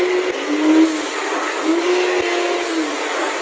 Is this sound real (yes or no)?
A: yes